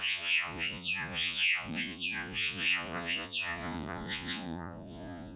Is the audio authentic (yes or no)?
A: no